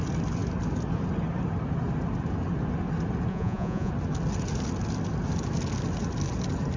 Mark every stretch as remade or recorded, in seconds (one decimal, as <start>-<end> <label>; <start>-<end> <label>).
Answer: 0.0-3.3 recorded; 3.3-3.9 remade; 3.9-6.8 recorded